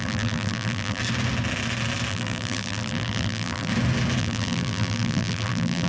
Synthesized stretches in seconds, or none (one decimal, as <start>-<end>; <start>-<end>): 0.0-1.0; 2.1-3.7; 4.2-5.9